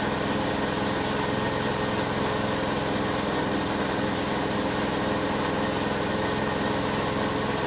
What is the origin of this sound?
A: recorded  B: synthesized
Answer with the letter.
A